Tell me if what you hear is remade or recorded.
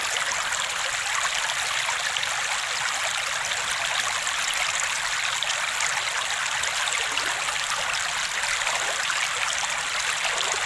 recorded